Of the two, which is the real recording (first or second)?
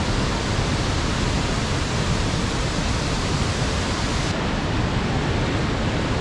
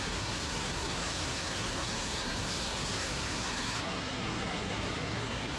first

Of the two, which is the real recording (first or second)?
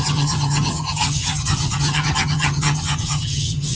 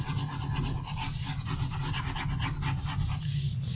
second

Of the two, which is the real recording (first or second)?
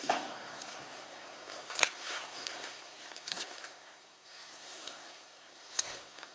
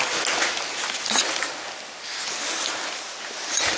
second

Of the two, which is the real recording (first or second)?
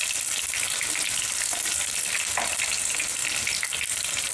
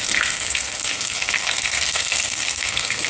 first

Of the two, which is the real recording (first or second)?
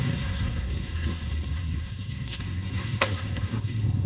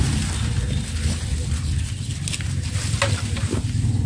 second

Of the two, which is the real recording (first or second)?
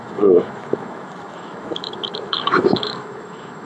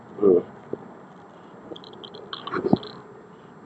second